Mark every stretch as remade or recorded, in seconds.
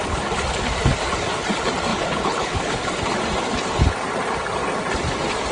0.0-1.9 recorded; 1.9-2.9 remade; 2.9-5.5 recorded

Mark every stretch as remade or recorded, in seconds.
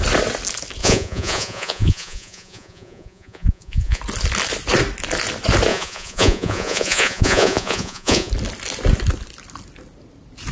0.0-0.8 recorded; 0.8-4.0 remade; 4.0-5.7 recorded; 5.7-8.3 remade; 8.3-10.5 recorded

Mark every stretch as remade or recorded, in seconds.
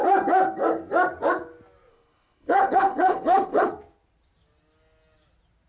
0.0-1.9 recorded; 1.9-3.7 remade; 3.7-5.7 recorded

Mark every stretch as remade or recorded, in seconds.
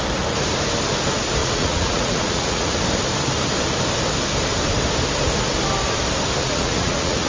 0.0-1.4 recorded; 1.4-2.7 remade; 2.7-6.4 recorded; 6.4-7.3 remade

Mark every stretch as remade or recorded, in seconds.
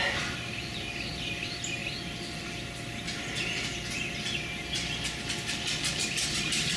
0.0-6.8 recorded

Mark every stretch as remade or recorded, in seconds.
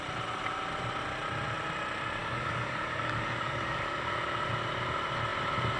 0.0-2.2 recorded; 2.2-4.1 remade; 4.1-5.8 recorded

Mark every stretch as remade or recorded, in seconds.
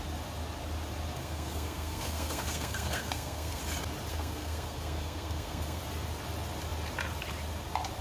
0.0-1.2 recorded; 1.2-3.6 remade; 3.6-4.1 recorded; 4.1-5.8 remade; 5.8-8.0 recorded